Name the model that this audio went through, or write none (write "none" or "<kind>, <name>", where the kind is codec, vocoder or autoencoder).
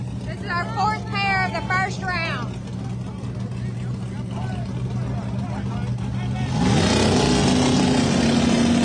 none